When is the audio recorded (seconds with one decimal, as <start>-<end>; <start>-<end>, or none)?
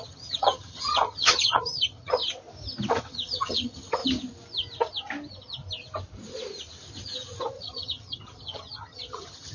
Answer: 2.2-2.9; 4.0-7.6